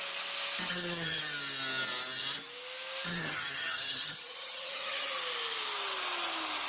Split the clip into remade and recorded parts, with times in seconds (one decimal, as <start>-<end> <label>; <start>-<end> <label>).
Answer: 0.0-0.7 recorded; 0.7-1.2 remade; 1.2-3.1 recorded; 3.1-5.1 remade; 5.1-6.7 recorded